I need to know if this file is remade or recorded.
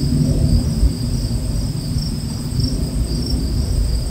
recorded